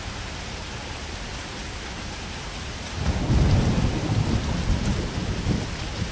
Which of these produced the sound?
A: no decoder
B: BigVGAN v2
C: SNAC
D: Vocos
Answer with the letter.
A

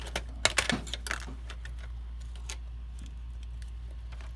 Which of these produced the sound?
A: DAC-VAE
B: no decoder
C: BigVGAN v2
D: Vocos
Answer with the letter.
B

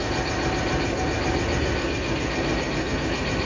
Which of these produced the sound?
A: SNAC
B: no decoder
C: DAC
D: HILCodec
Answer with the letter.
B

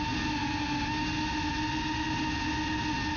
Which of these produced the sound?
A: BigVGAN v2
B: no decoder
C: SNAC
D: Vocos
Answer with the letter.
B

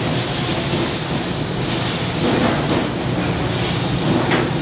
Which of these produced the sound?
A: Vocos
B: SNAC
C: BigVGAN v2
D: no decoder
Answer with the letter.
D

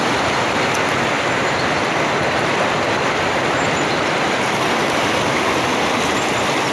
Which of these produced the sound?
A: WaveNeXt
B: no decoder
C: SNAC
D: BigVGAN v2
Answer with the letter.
B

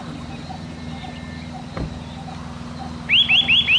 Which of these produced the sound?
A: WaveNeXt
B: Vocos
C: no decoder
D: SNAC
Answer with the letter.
C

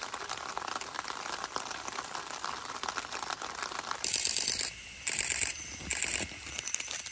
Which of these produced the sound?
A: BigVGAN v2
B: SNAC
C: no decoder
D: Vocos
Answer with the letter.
C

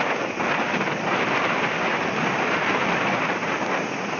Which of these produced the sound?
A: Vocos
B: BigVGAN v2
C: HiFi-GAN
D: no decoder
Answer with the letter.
D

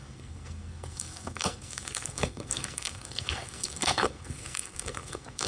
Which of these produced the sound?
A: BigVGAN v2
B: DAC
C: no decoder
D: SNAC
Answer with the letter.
D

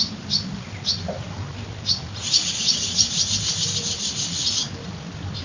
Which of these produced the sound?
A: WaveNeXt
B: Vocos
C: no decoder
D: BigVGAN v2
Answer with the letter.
C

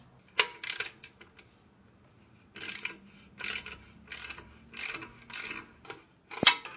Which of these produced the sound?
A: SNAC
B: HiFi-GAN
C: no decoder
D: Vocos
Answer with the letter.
C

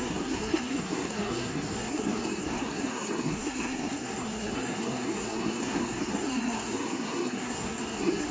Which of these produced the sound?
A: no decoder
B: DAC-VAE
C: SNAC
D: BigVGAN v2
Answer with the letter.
C